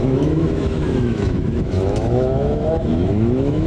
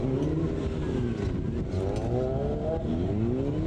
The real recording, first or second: second